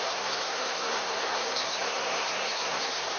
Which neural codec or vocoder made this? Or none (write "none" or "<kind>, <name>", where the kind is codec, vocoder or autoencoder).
codec, SNAC